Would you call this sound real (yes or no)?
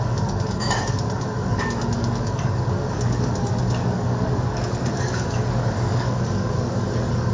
no